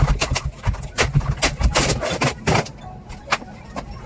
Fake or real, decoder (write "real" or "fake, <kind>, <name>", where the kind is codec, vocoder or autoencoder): real